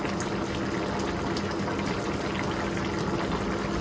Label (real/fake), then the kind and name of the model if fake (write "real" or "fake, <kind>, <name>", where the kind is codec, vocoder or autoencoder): real